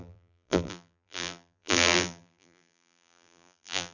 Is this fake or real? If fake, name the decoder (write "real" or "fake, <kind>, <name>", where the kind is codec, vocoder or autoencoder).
fake, vocoder, BigVGAN v2